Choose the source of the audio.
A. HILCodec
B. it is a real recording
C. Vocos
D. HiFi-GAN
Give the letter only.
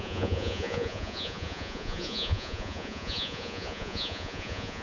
C